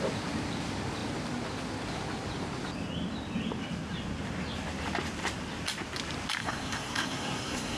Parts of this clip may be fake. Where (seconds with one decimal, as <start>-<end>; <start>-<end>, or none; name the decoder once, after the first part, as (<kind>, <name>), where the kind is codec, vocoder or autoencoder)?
6.4-7.8 (codec, SNAC)